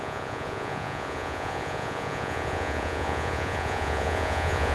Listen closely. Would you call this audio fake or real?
fake